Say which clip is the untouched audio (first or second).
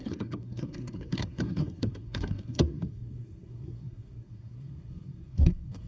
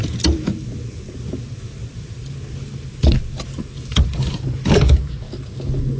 second